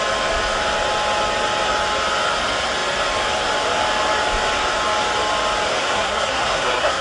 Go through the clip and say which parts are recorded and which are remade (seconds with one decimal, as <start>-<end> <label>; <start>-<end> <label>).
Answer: 0.0-5.8 recorded; 5.8-7.0 remade